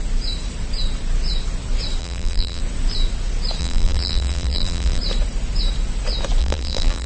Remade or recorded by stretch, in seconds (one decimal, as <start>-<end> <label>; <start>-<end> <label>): 0.0-2.0 recorded; 2.0-2.6 remade; 2.6-3.6 recorded; 3.6-5.0 remade; 5.0-6.4 recorded; 6.4-7.1 remade